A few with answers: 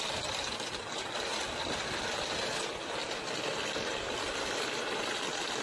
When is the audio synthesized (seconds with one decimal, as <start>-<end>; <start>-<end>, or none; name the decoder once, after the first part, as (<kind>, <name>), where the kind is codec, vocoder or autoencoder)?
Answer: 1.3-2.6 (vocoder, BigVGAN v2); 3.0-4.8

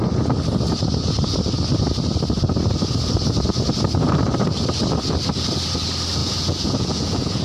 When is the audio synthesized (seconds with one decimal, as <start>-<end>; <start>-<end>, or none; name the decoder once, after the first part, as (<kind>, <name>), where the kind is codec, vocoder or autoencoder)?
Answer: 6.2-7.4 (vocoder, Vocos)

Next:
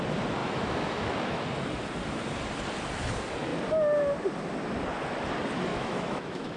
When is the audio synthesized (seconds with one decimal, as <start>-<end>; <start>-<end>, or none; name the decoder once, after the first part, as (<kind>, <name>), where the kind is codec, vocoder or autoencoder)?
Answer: 0.4-1.4 (autoencoder, DAC-VAE); 5.7-6.6

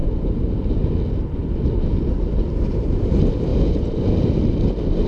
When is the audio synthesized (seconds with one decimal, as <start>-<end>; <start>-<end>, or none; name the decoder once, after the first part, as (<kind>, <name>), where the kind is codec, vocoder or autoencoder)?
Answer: none

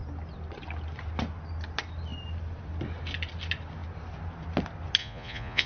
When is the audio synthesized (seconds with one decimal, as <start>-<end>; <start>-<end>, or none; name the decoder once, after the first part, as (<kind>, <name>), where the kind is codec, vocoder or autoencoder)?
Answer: 5.0-5.7 (vocoder, Vocos)

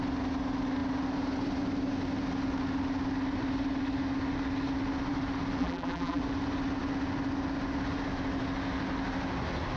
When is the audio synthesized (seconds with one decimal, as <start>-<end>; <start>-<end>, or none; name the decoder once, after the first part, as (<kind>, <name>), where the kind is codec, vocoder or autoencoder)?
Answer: 5.6-6.2 (vocoder, BigVGAN v2)

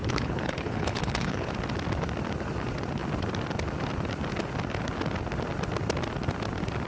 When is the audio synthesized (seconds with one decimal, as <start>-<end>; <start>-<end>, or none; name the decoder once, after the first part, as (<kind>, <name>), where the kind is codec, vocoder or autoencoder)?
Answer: 0.0-1.5 (codec, HILCodec)